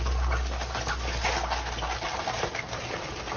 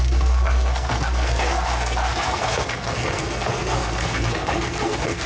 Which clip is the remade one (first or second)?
second